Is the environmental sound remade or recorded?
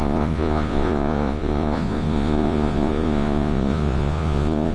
remade